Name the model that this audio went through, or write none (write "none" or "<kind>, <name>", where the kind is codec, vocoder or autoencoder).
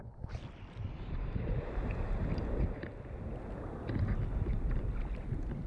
none